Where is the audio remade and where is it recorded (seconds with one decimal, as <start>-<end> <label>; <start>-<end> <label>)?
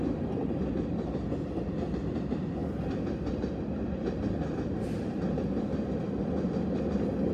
0.0-7.3 recorded